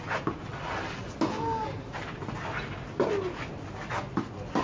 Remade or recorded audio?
recorded